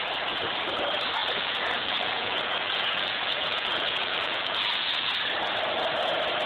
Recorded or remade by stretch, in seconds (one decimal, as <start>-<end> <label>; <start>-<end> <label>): 0.0-1.2 recorded; 1.2-5.1 remade; 5.1-6.5 recorded